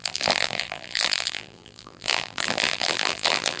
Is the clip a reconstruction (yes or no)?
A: yes